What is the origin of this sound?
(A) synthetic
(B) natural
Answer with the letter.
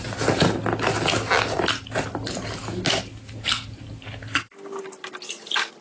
B